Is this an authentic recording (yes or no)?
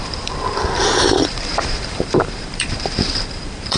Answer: no